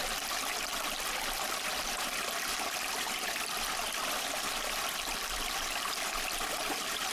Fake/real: real